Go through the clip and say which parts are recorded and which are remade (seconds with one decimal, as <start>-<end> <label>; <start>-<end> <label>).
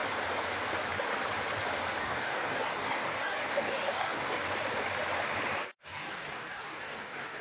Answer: 0.0-2.0 recorded; 2.0-4.4 remade; 4.4-5.6 recorded; 5.6-7.4 remade